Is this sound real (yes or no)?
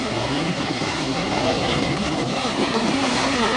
no